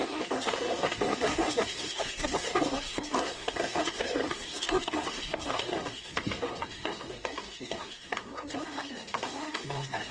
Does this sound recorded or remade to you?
remade